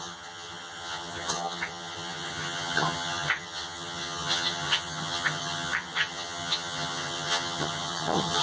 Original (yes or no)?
no